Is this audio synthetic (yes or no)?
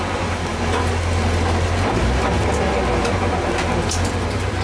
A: no